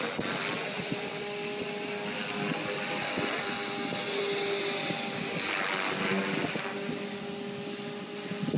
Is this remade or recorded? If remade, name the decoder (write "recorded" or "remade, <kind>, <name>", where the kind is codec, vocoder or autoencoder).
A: recorded